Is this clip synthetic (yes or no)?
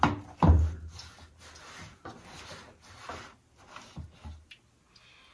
no